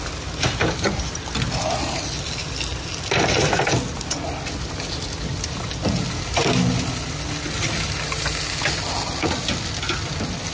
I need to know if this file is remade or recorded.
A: recorded